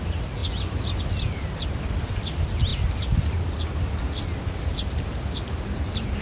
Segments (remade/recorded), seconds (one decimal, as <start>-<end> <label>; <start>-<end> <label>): 0.0-6.2 recorded